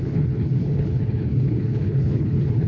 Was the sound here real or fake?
fake